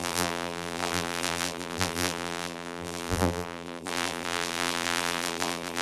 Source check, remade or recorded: remade